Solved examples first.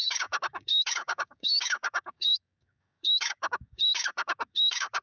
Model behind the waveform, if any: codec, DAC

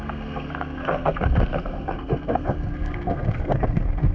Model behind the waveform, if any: codec, SNAC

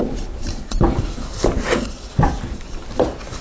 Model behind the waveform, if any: none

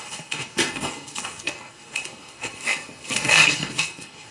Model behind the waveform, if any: codec, SNAC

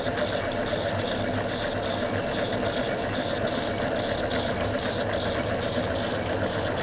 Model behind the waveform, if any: none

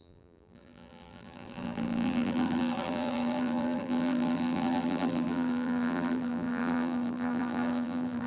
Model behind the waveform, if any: vocoder, BigVGAN v2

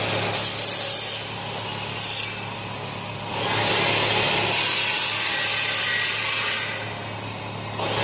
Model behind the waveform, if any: none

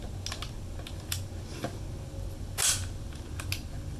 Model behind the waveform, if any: none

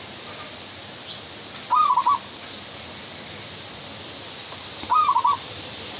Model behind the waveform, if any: none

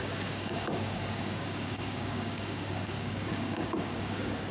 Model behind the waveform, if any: codec, DAC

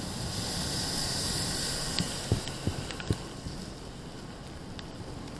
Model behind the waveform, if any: none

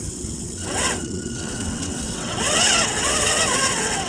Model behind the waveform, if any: vocoder, WaveNeXt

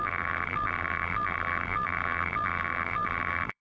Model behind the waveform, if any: vocoder, BigVGAN v2